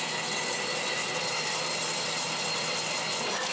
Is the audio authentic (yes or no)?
yes